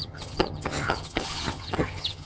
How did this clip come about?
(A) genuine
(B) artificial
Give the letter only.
B